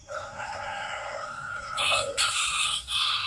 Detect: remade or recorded remade